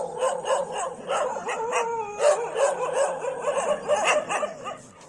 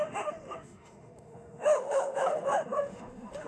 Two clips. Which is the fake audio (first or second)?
second